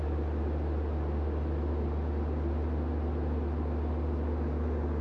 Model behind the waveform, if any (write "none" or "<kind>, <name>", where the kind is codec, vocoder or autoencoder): none